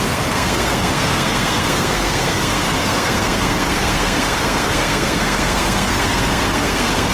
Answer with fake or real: fake